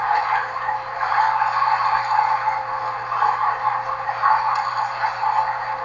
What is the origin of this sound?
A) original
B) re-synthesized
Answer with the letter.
A